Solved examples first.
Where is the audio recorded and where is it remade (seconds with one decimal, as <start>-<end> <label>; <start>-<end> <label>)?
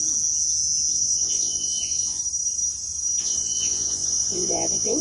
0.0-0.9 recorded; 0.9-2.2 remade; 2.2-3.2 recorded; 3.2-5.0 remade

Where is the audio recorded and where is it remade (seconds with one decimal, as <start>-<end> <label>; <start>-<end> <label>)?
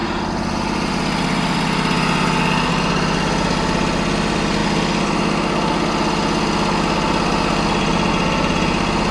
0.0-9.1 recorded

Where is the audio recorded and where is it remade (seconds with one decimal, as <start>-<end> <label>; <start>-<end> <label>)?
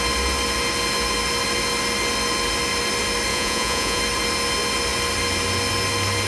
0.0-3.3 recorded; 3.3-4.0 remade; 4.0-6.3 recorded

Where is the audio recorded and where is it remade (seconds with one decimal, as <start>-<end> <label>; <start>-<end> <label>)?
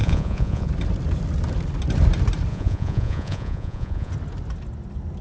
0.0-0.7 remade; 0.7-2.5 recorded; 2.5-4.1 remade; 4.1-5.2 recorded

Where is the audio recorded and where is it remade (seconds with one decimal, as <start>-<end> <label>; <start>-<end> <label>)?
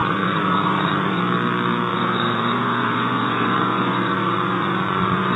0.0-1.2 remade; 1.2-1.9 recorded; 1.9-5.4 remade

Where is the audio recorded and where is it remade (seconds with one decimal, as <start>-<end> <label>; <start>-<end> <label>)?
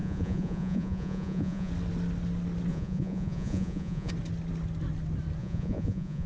0.0-1.7 remade; 1.7-2.7 recorded; 2.7-4.1 remade; 4.1-5.4 recorded; 5.4-6.3 remade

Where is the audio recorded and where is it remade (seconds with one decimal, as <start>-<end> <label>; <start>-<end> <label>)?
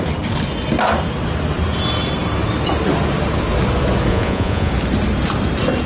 0.0-4.1 recorded; 4.1-4.7 remade; 4.7-5.9 recorded